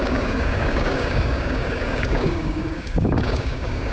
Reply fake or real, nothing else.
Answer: fake